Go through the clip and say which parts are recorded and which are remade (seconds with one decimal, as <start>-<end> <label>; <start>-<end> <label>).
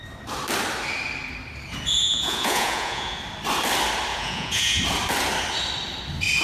0.0-2.0 recorded; 2.0-3.2 remade; 3.2-4.1 recorded; 4.1-4.8 remade; 4.8-6.4 recorded